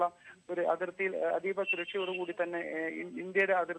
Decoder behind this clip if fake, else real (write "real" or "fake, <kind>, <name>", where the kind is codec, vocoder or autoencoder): real